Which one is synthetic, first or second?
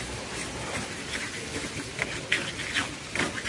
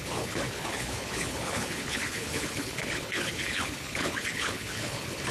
second